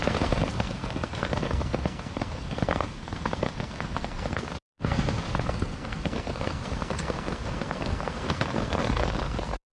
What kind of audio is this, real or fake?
fake